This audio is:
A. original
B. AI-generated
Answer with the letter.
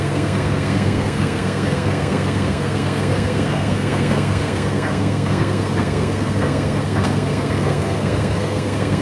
B